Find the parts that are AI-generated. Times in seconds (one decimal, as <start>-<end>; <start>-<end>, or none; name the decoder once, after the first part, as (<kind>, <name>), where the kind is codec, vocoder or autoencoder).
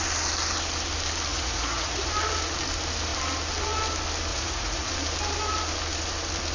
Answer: 1.3-2.1 (vocoder, Vocos); 4.3-4.9